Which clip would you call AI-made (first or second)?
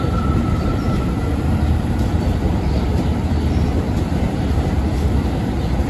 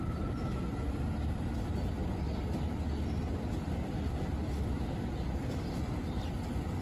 first